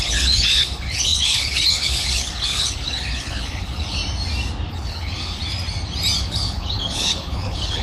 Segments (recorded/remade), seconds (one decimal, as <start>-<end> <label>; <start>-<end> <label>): 0.0-4.0 remade; 4.0-4.7 recorded; 4.7-5.4 remade; 5.4-6.2 recorded; 6.2-7.8 remade